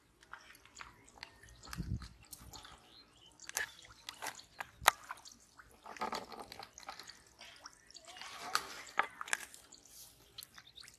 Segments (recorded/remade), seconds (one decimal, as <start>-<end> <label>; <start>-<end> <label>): 0.0-11.0 recorded